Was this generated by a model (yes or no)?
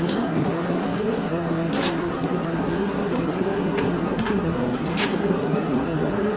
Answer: yes